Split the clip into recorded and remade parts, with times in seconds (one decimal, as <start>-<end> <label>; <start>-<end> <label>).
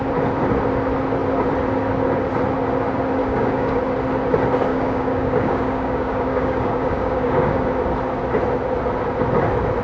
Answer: 0.0-3.2 recorded; 3.2-3.8 remade; 3.8-4.7 recorded; 4.7-7.6 remade; 7.6-9.8 recorded